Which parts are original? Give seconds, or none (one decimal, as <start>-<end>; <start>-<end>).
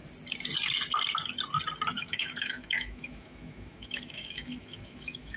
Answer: 0.0-1.9